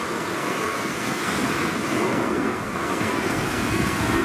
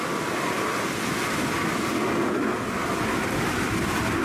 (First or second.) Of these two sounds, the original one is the second